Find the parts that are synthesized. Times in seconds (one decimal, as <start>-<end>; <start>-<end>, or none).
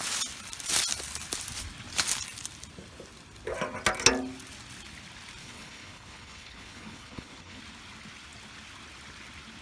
5.4-7.6